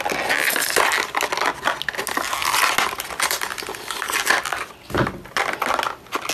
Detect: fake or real real